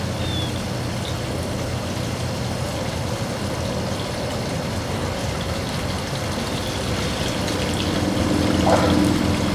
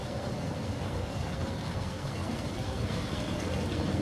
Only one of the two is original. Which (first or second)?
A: first